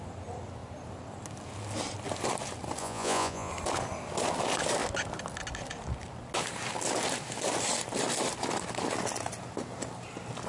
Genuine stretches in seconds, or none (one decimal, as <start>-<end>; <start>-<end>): 0.0-2.8; 3.5-10.5